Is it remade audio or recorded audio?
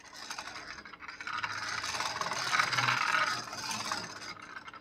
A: recorded